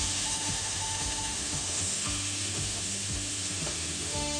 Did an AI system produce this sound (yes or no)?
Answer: yes